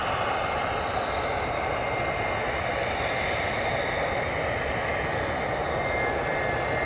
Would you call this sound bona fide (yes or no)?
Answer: yes